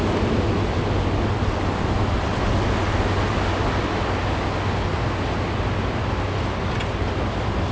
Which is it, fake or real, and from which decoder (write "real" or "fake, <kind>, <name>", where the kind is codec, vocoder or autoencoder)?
real